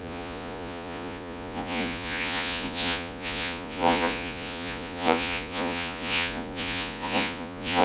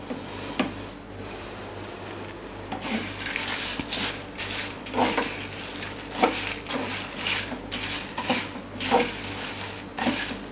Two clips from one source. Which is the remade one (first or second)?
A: first